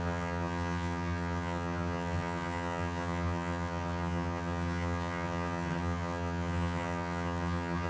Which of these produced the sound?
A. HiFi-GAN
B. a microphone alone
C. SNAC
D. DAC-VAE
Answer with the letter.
A